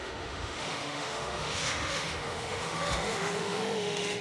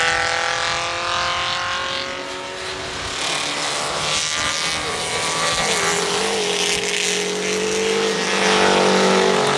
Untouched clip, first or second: second